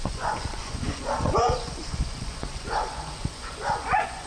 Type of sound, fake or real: fake